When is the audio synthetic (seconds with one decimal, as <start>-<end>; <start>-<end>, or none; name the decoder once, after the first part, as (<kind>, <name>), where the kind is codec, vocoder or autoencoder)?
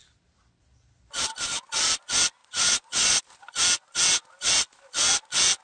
2.4-3.2 (vocoder, Vocos)